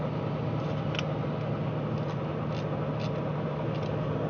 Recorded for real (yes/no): yes